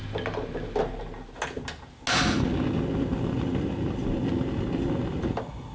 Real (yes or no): yes